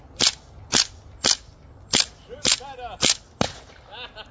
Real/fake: real